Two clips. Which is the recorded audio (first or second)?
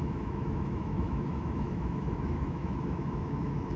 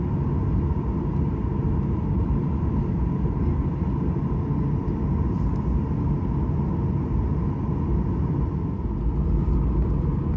second